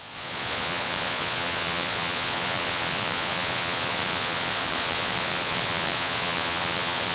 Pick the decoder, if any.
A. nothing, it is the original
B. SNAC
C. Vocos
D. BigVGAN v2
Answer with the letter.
C